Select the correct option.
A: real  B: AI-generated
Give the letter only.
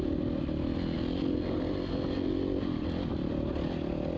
A